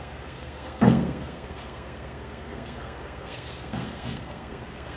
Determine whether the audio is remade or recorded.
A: remade